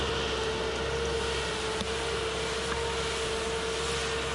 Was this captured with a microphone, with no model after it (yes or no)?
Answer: yes